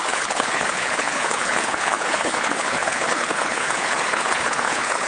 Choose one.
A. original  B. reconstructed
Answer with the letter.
B